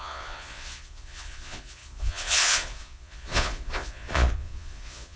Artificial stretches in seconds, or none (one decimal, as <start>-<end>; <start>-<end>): 0.0-5.2